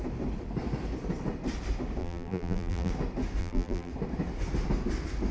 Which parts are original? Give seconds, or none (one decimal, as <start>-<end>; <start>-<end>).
0.0-2.0; 2.9-3.4; 3.9-5.3